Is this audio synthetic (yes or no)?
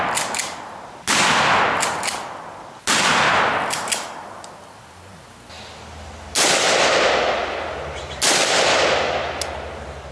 no